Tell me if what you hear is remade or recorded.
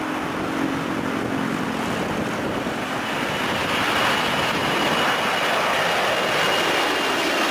recorded